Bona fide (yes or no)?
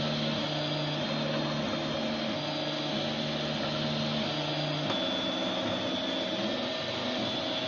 yes